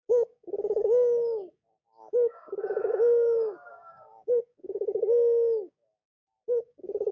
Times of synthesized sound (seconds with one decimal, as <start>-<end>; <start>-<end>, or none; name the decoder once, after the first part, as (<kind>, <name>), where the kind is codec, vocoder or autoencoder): 0.0-7.1 (codec, DAC)